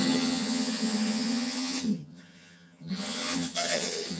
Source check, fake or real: fake